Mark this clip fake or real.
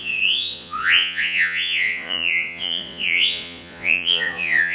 fake